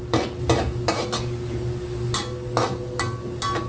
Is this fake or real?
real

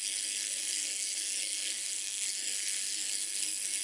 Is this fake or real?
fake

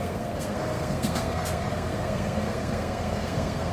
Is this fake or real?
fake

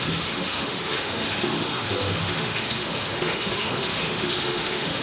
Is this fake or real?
fake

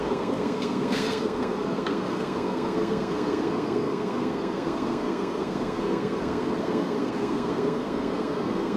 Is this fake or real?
fake